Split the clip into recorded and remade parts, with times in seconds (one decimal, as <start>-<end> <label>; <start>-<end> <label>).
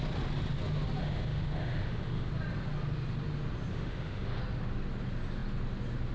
0.0-1.0 recorded; 1.0-2.3 remade; 2.3-3.7 recorded; 3.7-4.4 remade; 4.4-6.1 recorded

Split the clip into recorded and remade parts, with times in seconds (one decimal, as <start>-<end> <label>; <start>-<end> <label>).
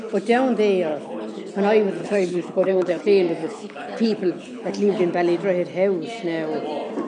0.0-0.9 recorded; 0.9-1.5 remade; 1.5-2.0 recorded; 2.0-3.0 remade; 3.0-3.4 recorded; 3.4-5.0 remade; 5.0-7.1 recorded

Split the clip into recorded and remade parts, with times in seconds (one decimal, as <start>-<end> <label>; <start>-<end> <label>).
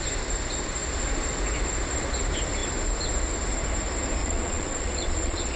0.0-4.2 recorded; 4.2-5.6 remade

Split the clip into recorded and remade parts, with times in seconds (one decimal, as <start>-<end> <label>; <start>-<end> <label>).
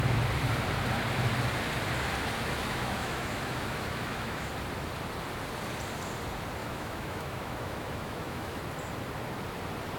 0.0-2.6 recorded; 2.6-4.5 remade; 4.5-6.6 recorded; 6.6-8.6 remade; 8.6-10.0 recorded